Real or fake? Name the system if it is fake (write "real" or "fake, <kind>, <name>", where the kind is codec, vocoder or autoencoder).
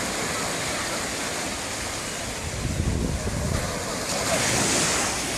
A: real